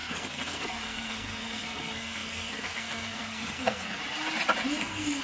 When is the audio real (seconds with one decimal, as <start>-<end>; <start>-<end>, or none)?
4.0-4.8